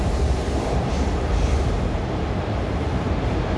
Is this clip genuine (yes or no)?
no